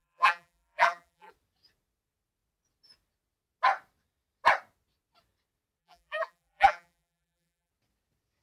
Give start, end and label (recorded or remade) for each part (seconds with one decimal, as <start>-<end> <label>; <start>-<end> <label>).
0.0-1.3 remade; 1.3-5.8 recorded; 5.8-7.7 remade; 7.7-8.4 recorded